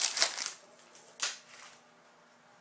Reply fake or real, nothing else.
real